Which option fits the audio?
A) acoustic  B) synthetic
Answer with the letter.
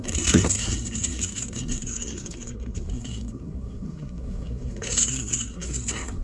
B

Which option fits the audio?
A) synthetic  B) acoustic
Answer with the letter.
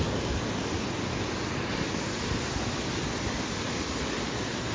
B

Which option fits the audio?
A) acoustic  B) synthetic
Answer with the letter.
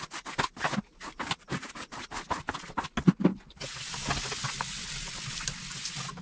A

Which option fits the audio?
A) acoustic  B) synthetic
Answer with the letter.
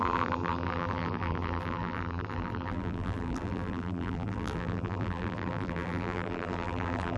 B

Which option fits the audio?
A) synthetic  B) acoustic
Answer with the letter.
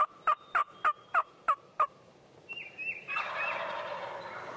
A